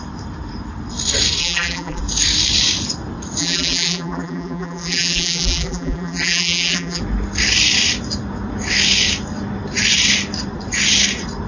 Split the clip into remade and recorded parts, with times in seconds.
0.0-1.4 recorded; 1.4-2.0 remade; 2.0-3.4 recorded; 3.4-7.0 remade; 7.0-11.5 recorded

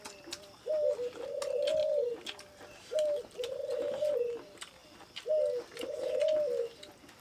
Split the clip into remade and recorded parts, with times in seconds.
0.0-1.8 recorded; 1.8-3.7 remade; 3.7-7.2 recorded